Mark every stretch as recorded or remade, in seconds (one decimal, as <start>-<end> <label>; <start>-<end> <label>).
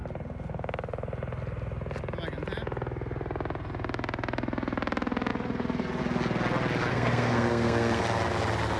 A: 0.0-6.9 recorded; 6.9-8.0 remade; 8.0-8.8 recorded